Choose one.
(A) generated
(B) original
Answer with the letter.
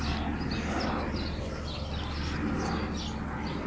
B